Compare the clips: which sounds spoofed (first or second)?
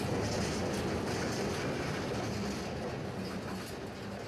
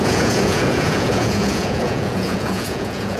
second